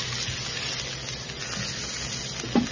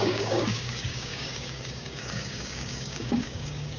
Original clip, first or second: first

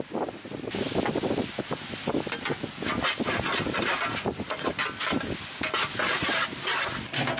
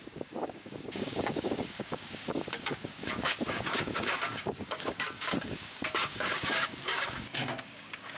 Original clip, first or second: first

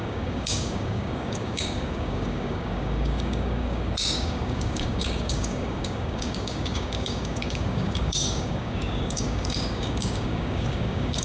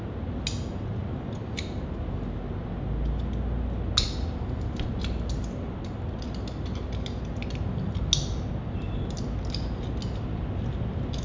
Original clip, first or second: second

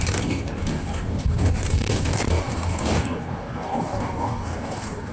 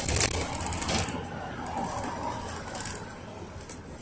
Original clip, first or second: second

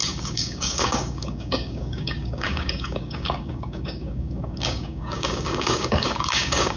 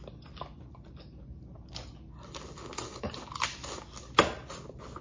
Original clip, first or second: second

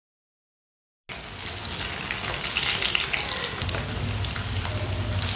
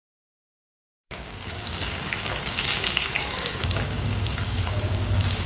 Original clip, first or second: first